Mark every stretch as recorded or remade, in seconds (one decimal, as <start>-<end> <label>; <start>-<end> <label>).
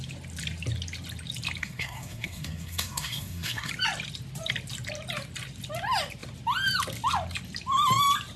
0.0-1.6 recorded; 1.6-3.7 remade; 3.7-8.4 recorded